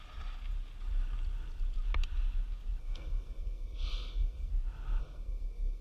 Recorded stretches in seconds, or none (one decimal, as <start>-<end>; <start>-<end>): 0.0-2.8; 4.5-5.0